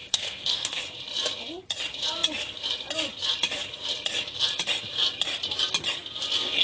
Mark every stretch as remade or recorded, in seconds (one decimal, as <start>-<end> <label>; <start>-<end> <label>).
0.0-0.8 remade; 0.8-6.6 recorded